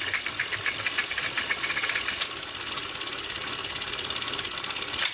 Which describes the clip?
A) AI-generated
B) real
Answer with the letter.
A